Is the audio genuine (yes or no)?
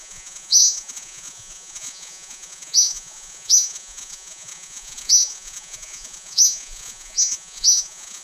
no